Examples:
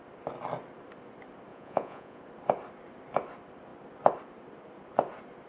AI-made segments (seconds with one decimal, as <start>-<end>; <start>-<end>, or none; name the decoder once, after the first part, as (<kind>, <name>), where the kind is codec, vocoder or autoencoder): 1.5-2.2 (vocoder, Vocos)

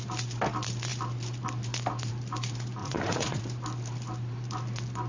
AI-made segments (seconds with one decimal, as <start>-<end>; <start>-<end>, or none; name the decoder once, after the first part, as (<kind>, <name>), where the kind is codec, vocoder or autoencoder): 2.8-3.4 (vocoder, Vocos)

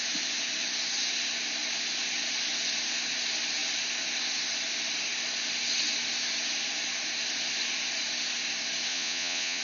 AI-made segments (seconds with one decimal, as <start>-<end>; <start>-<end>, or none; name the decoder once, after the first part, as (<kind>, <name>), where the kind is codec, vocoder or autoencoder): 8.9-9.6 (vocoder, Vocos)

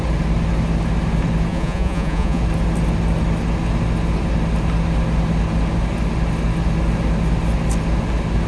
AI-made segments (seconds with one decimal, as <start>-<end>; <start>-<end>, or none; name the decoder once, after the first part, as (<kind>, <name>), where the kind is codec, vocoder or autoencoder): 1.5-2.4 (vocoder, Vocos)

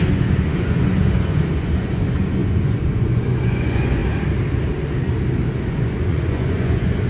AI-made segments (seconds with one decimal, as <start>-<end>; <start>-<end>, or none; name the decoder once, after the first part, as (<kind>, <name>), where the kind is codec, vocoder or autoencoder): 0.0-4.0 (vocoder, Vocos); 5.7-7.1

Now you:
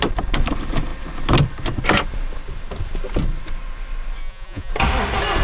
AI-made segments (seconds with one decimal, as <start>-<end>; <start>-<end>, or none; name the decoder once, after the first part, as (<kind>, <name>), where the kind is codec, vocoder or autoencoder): 4.2-4.7 (vocoder, Vocos)

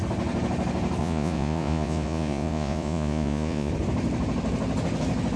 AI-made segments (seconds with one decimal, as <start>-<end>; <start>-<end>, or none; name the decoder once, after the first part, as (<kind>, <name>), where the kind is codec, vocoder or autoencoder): 1.0-3.7 (vocoder, Vocos)

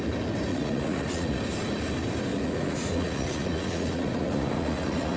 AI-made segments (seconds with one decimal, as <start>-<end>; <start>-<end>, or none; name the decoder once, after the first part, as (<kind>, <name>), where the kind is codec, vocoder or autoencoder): 0.5-1.4 (vocoder, Vocos); 2.3-5.2